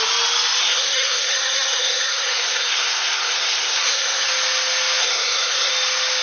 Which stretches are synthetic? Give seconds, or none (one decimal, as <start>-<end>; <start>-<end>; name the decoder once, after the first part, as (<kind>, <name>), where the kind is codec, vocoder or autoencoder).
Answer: 0.6-4.3 (codec, SNAC); 5.0-5.7